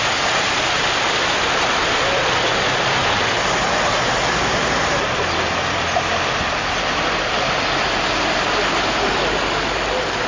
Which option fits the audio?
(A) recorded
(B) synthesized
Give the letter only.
A